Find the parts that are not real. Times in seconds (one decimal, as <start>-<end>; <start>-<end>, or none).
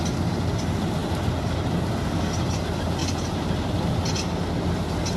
3.0-3.8